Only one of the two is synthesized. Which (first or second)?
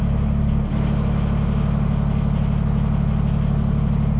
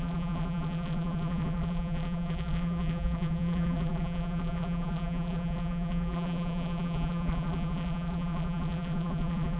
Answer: second